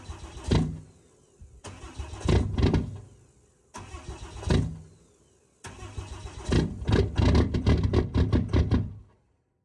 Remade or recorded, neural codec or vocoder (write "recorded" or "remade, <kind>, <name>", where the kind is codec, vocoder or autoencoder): recorded